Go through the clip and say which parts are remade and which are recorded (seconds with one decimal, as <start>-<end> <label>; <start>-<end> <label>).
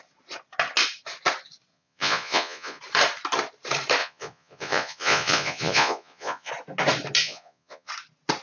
0.0-1.7 recorded; 1.7-2.8 remade; 2.8-4.0 recorded; 4.0-6.5 remade; 6.5-7.2 recorded; 7.2-7.9 remade; 7.9-8.4 recorded